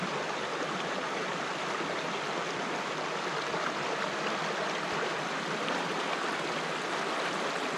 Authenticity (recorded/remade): recorded